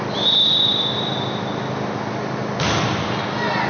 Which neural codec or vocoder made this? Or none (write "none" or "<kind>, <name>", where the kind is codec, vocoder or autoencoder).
none